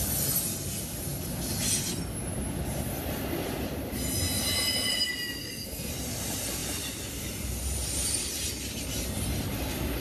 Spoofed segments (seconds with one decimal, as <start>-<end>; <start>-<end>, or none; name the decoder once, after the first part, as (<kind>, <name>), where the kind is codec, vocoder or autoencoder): 5.4-5.9 (codec, SNAC)